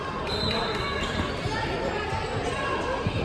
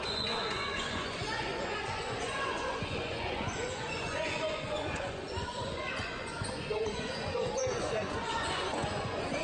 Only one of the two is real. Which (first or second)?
first